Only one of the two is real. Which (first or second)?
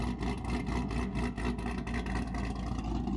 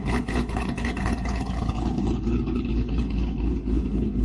first